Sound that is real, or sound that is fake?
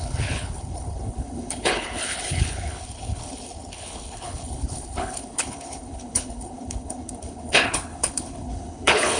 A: fake